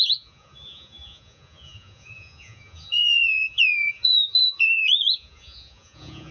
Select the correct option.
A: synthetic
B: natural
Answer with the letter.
A